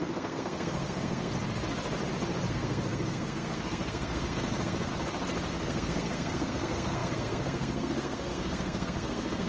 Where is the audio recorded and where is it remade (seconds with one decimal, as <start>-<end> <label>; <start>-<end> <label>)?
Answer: 0.0-1.3 remade; 1.3-2.5 recorded; 2.5-4.9 remade; 4.9-5.5 recorded; 5.5-9.5 remade